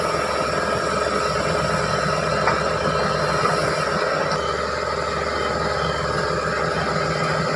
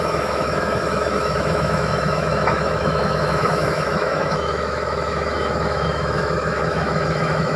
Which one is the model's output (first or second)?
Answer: second